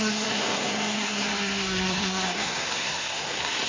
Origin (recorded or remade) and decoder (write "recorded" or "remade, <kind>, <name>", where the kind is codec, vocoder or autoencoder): remade, codec, SNAC